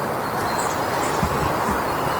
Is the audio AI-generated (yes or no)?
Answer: no